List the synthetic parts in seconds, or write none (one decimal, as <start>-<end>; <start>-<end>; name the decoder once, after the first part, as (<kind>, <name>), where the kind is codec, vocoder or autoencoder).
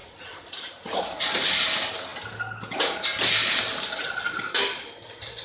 none